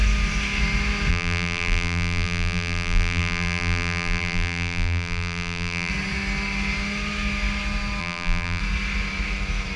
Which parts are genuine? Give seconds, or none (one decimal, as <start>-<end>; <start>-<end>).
0.0-1.1; 5.9-8.0; 8.6-9.8